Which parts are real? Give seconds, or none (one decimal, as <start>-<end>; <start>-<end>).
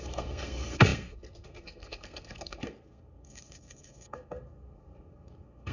none